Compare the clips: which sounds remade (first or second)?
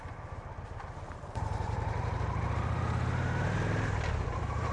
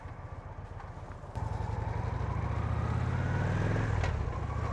first